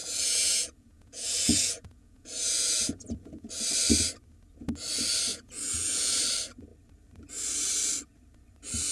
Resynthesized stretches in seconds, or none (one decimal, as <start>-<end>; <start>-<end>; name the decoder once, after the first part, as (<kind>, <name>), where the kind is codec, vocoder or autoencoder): 0.0-3.5 (vocoder, Vocos); 5.3-6.2